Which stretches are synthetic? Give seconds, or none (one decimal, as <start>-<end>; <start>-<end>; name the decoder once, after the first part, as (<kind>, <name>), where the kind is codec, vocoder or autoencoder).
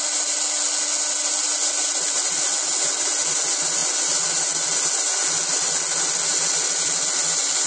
none